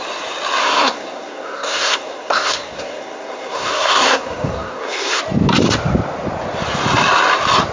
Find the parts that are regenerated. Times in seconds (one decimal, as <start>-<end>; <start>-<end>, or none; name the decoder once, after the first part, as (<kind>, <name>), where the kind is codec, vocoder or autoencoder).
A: 0.6-5.2 (codec, SNAC)